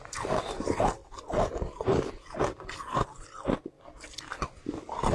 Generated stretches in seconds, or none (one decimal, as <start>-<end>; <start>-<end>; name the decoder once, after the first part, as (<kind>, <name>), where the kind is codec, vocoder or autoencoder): none